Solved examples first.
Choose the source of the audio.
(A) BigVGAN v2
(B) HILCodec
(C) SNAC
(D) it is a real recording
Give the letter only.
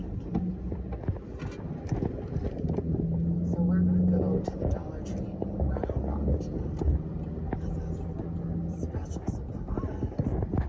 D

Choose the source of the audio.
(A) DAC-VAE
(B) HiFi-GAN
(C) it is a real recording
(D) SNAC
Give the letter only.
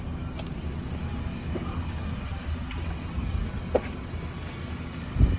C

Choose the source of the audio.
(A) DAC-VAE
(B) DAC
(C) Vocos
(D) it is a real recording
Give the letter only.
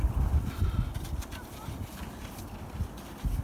D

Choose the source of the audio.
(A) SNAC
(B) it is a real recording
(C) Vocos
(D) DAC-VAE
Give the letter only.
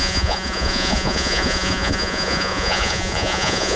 C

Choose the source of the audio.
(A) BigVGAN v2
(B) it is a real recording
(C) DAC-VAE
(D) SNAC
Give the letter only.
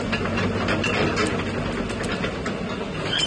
B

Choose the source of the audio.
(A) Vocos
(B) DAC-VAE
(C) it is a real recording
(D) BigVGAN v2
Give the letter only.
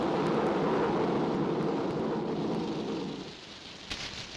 C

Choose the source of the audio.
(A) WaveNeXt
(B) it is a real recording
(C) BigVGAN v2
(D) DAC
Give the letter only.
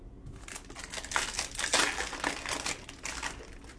B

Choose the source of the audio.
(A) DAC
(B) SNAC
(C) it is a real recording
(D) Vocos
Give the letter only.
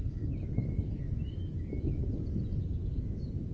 C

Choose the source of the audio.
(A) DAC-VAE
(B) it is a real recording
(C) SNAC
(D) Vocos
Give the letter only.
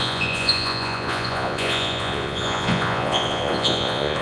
D